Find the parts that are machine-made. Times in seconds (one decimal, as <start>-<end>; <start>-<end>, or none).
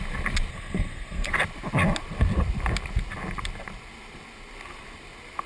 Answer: 0.5-1.3